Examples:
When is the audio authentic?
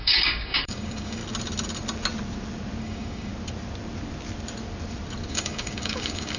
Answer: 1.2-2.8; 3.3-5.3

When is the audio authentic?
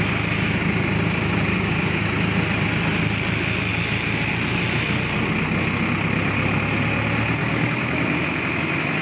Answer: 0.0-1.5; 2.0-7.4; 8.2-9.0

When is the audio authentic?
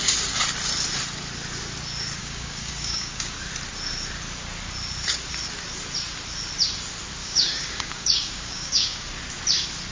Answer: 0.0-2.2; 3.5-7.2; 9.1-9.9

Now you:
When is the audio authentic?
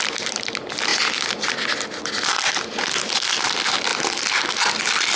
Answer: 0.0-5.2